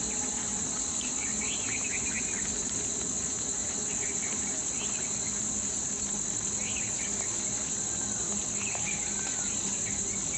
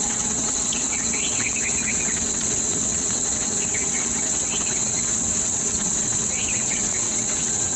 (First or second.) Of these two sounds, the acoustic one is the first